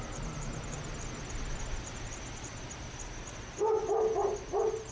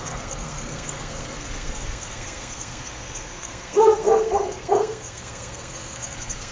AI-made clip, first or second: second